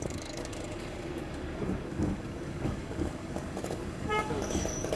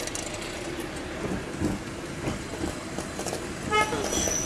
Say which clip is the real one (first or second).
second